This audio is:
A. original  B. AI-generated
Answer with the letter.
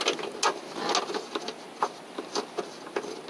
A